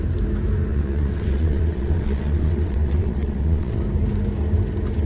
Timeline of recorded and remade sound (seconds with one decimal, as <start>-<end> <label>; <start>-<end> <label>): 0.0-0.7 recorded; 0.7-3.8 remade; 3.8-5.1 recorded